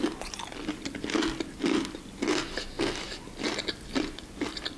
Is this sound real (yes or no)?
yes